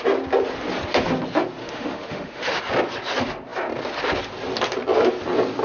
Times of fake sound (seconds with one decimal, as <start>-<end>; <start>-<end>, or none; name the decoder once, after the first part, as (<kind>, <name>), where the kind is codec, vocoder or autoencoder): 1.6-2.6 (autoencoder, DAC-VAE)